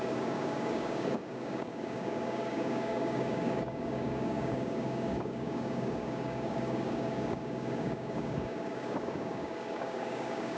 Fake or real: fake